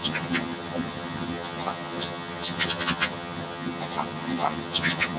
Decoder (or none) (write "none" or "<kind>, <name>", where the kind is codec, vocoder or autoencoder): vocoder, HiFi-GAN